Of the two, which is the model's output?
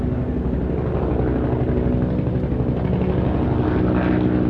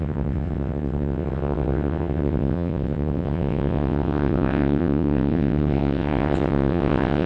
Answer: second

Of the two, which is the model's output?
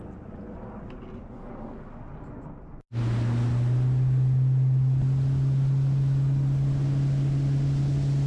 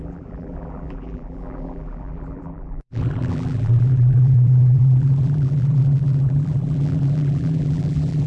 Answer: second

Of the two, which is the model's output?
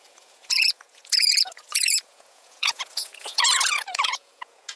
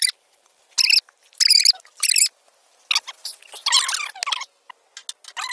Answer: first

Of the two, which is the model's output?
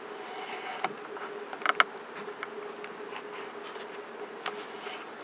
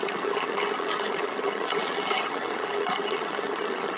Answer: second